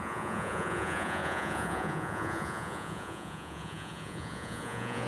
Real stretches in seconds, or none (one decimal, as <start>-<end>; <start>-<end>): none